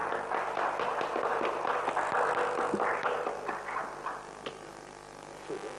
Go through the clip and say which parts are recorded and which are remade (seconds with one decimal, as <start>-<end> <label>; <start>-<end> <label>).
0.0-5.8 recorded